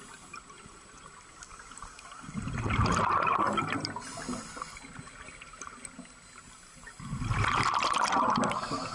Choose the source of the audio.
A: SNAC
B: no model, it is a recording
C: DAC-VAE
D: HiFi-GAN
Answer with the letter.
B